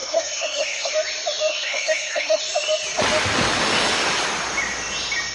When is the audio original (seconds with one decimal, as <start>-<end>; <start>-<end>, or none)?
0.9-1.5; 2.4-5.3